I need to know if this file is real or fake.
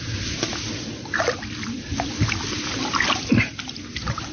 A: real